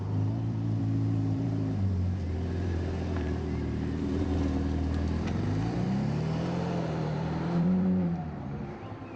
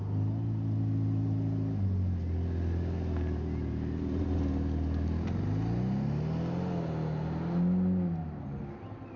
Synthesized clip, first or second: first